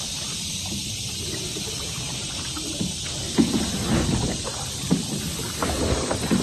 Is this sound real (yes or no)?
yes